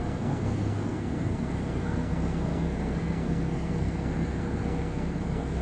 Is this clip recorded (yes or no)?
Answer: no